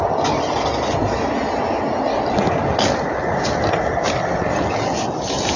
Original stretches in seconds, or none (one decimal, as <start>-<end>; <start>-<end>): 0.0-5.6

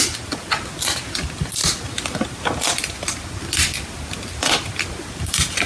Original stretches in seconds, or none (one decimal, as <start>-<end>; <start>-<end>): 0.0-5.7

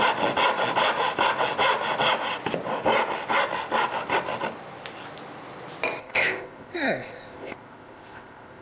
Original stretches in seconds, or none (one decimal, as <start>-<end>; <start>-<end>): 0.0-6.0